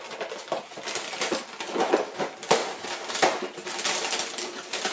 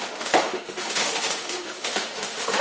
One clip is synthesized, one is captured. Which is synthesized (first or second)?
second